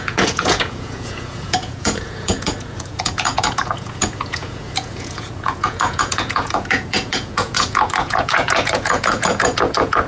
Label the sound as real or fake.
fake